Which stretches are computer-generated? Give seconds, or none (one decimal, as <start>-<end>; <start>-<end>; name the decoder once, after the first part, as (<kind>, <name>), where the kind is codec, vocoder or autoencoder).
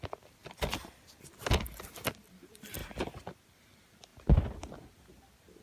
none